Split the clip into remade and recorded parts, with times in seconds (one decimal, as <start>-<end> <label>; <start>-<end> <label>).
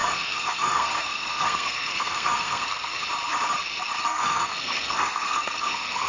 0.0-3.0 remade; 3.0-4.0 recorded; 4.0-6.1 remade